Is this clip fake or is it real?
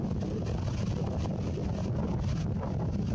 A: real